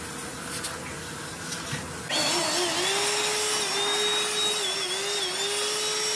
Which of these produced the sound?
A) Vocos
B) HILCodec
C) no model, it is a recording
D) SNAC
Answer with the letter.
C